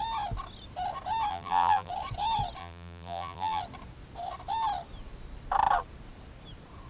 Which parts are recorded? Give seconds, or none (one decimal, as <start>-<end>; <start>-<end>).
0.0-1.3; 1.9-2.6; 3.6-6.9